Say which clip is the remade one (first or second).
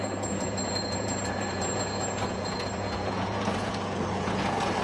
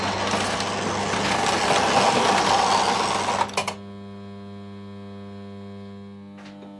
first